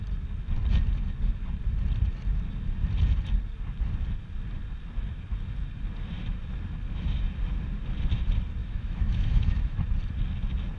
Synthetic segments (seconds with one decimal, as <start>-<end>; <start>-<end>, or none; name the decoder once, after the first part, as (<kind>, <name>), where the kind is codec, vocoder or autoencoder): 8.6-9.8 (autoencoder, DAC-VAE)

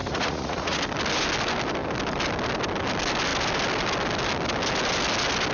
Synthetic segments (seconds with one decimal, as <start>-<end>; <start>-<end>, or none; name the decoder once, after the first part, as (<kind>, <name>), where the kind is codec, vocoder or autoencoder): 0.0-0.8 (vocoder, Vocos)

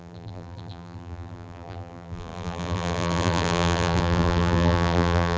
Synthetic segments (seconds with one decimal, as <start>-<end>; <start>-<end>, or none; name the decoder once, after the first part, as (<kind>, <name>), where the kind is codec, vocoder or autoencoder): 0.0-5.4 (vocoder, BigVGAN v2)

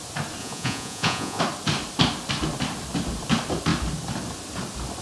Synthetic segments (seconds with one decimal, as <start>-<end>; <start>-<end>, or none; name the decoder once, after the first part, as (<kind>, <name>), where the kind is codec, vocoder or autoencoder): 0.4-1.4 (vocoder, Vocos)

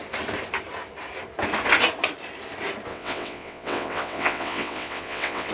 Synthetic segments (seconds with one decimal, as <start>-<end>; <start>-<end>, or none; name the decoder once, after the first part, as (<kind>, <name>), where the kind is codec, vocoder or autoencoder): 2.9-5.5 (vocoder, WaveNeXt)